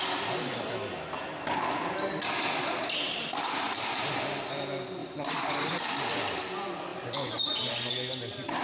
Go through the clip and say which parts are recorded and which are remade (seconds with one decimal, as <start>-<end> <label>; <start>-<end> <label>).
0.0-5.0 recorded; 5.0-5.8 remade; 5.8-6.9 recorded; 6.9-7.9 remade; 7.9-8.6 recorded